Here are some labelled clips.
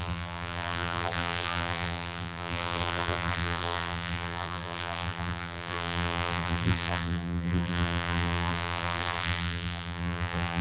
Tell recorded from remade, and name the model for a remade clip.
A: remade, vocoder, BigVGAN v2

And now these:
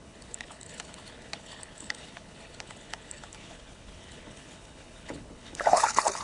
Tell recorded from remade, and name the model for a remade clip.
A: remade, codec, HILCodec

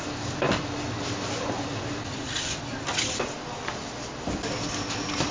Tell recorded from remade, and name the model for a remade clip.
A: recorded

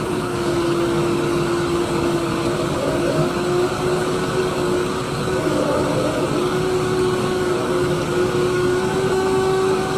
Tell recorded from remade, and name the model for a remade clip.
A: remade, codec, DAC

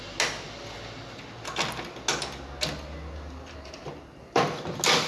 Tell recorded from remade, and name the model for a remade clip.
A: recorded